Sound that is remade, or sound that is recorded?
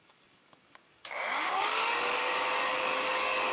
remade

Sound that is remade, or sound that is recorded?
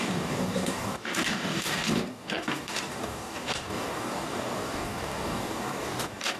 remade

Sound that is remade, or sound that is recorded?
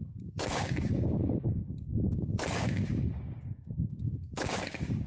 remade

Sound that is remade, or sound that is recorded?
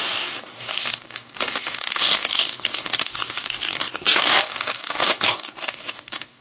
remade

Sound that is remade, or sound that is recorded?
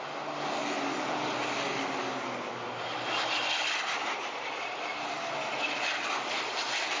recorded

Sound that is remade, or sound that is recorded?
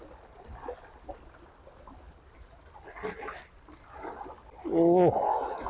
recorded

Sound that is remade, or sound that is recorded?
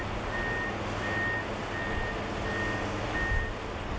recorded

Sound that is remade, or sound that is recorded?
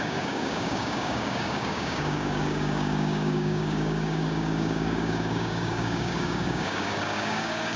remade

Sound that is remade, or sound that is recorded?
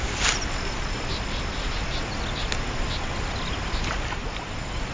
recorded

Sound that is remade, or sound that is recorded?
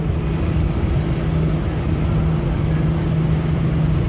recorded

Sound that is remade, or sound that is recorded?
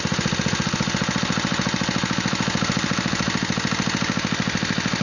recorded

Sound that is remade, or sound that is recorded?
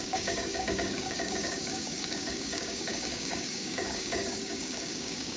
remade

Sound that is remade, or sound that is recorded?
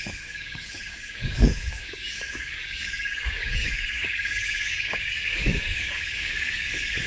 remade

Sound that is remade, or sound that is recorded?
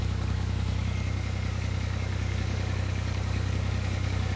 remade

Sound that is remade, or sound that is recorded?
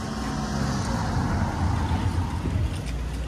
recorded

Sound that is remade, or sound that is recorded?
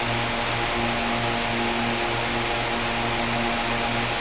recorded